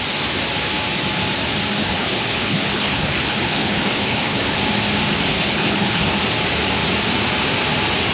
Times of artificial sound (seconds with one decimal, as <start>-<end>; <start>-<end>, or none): 1.8-4.6; 5.3-6.1